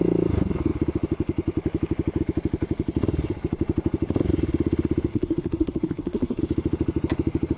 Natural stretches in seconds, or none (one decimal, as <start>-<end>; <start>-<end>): 0.0-5.1; 6.4-7.6